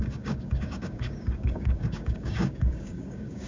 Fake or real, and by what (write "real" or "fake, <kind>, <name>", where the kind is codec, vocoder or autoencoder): fake, codec, DAC